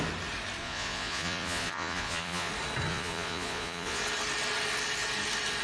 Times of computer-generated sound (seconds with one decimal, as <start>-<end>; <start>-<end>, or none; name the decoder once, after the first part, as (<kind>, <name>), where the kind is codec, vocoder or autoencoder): 0.6-2.5 (vocoder, Vocos); 2.9-4.0